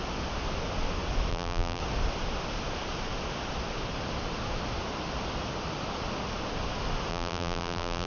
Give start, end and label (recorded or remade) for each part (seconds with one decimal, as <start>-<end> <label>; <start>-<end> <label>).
0.0-1.3 recorded; 1.3-1.8 remade; 1.8-7.1 recorded; 7.1-8.1 remade